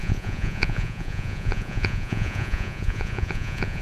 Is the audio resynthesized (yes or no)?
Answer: yes